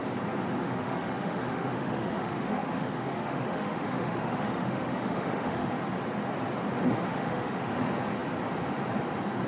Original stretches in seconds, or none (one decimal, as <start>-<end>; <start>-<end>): 0.0-0.6; 5.7-7.1; 7.7-9.5